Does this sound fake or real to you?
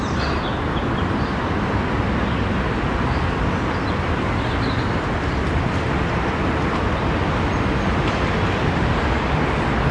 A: real